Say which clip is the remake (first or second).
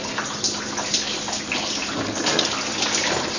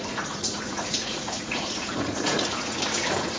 second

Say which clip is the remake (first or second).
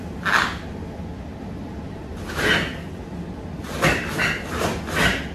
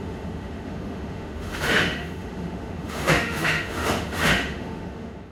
second